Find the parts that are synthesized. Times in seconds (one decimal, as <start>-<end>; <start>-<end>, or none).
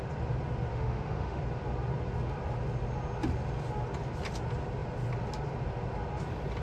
0.7-1.4